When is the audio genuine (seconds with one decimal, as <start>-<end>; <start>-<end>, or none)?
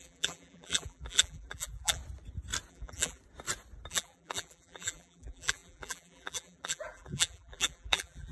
2.0-2.7; 3.2-3.9